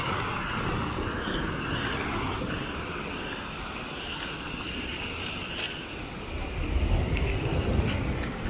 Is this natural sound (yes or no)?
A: yes